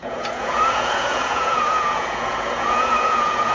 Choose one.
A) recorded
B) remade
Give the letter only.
B